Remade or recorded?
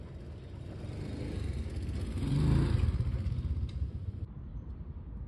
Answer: recorded